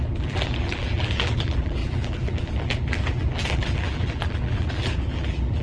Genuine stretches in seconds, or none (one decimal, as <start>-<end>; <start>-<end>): none